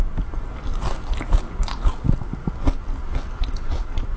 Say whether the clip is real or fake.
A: real